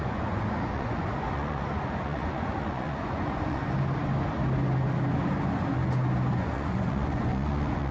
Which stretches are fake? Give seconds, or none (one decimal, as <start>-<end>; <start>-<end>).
0.0-3.6; 6.3-7.9